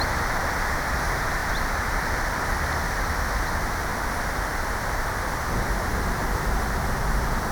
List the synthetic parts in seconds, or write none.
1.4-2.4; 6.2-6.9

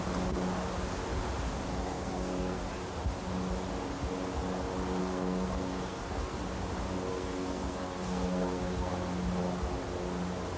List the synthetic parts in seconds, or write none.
1.7-2.6; 5.0-6.4; 7.1-8.9